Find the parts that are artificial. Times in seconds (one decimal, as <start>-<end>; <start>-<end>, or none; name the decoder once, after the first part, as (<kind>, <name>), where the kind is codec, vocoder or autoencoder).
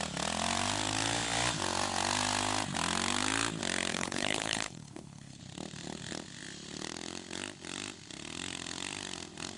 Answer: 3.9-5.4 (codec, HILCodec)